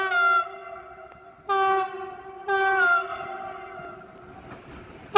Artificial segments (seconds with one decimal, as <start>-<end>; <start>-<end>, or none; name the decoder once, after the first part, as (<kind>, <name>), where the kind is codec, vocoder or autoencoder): none